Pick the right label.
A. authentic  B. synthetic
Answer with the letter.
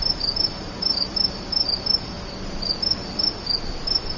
A